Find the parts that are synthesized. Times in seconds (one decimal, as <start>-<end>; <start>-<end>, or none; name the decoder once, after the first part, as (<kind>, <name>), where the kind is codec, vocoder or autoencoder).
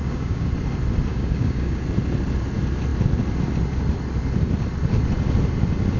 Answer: 0.0-0.5 (codec, DAC); 1.1-1.8